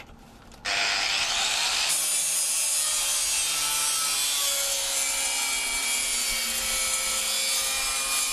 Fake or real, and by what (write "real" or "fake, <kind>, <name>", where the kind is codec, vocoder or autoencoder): real